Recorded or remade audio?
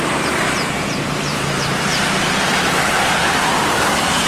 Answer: remade